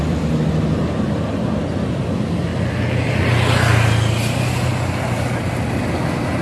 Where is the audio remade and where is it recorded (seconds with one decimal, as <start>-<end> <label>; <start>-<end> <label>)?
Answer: 0.0-2.5 remade; 2.5-6.4 recorded